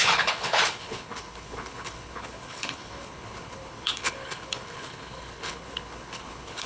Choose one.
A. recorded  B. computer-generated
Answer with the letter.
B